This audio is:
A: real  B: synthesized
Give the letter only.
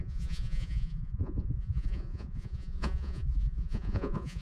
B